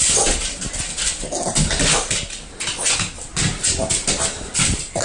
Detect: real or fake real